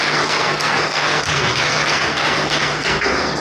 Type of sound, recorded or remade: remade